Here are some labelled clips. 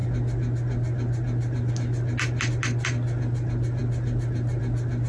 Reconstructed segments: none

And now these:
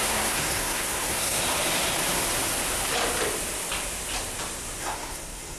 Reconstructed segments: 0.0-1.4 (codec, SNAC); 4.8-5.6

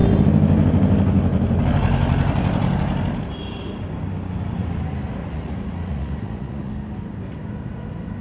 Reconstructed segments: 5.2-6.7 (vocoder, Vocos)